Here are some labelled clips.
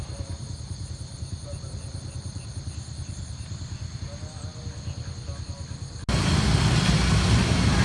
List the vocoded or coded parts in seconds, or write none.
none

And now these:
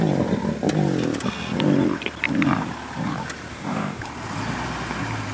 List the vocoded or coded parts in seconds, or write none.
3.5-4.0

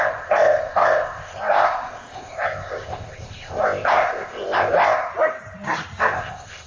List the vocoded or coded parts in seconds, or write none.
0.0-5.1; 6.0-6.7

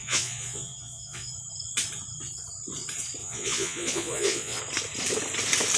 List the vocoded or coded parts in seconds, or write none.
0.0-1.3; 3.2-4.6

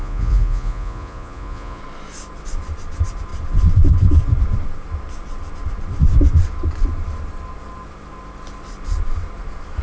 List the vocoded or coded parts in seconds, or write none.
0.0-1.8

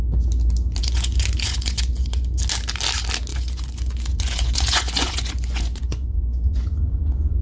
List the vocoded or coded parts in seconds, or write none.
0.8-2.4; 3.3-7.4